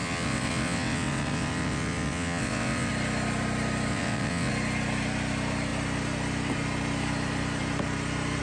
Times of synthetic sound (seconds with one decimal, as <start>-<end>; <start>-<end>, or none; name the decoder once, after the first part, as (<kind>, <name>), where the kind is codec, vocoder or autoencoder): 0.0-2.9 (vocoder, WaveNeXt); 3.9-4.5